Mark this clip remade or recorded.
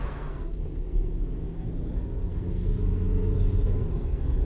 remade